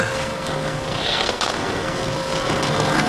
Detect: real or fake fake